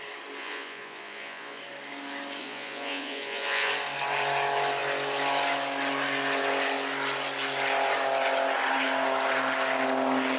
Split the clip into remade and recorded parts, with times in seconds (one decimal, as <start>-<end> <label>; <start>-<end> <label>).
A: 0.0-0.4 recorded; 0.4-1.6 remade; 1.6-2.4 recorded; 2.4-3.7 remade; 3.7-10.4 recorded